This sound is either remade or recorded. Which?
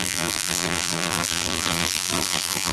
remade